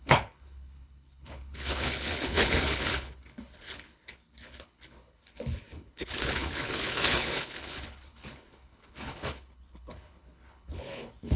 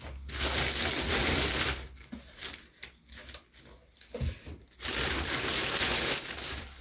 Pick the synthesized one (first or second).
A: first